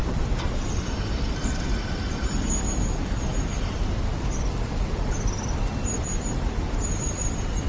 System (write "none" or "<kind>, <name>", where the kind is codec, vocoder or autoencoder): vocoder, BigVGAN v2